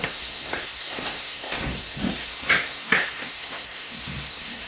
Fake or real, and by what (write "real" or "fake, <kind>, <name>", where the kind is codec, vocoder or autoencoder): fake, codec, SNAC